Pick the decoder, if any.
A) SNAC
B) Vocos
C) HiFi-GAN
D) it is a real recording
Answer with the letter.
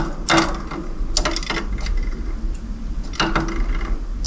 D